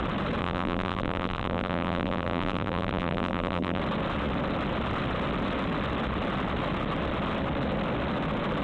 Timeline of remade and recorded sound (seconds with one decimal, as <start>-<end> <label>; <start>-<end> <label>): 0.0-0.4 recorded; 0.4-3.8 remade; 3.8-8.6 recorded